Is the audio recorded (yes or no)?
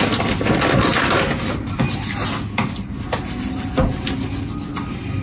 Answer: yes